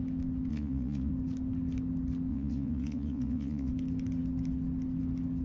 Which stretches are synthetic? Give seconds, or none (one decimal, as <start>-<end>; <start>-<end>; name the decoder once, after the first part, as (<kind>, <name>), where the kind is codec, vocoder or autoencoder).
0.5-1.1 (vocoder, Vocos); 2.3-3.7